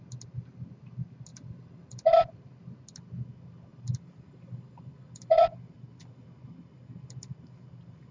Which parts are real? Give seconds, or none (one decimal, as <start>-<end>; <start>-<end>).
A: 0.0-1.3; 2.3-3.7; 5.4-8.1

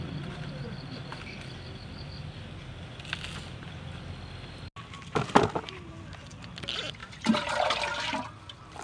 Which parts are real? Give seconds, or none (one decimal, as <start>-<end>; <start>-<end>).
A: 0.0-8.8

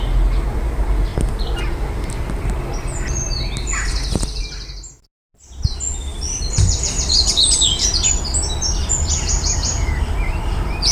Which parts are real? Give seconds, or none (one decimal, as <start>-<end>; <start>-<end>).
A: 0.0-10.9

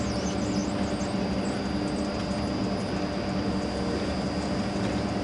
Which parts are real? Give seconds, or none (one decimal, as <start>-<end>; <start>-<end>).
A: 0.0-5.2

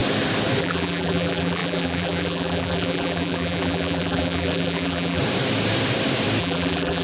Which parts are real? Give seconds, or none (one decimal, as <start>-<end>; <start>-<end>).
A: 0.0-0.6; 5.2-6.4

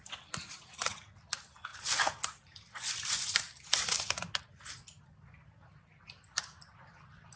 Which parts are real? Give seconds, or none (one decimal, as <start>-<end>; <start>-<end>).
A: 0.0-7.4